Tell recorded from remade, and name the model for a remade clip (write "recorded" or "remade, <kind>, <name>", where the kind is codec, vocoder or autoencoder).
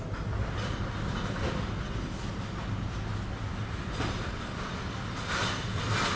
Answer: recorded